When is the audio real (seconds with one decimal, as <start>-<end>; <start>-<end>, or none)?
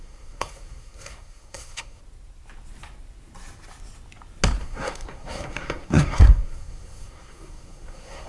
2.0-4.6